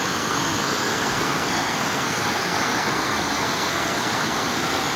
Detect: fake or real fake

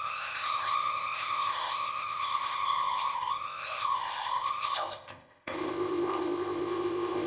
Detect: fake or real fake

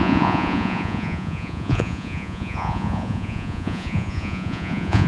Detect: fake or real fake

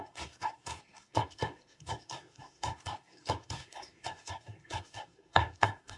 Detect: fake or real fake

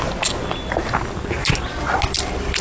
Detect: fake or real real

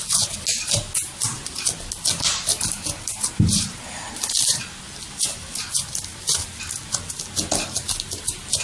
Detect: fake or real real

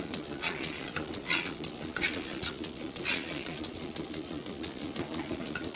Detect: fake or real fake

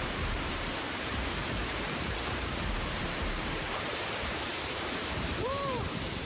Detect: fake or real fake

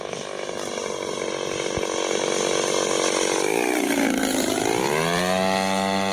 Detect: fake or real real